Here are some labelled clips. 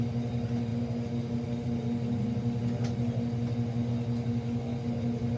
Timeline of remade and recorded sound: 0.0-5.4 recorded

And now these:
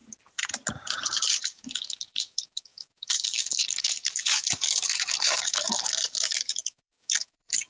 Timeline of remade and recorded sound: 0.0-1.4 recorded; 1.4-7.7 remade